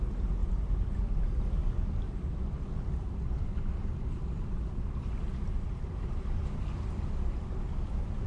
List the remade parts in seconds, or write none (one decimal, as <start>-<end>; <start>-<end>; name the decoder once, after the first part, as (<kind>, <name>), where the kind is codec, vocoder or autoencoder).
0.4-1.0 (vocoder, BigVGAN v2)